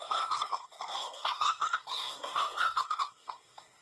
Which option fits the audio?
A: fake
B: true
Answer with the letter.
A